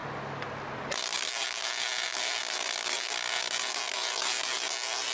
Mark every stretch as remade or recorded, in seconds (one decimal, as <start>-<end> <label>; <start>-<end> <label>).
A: 0.0-5.1 recorded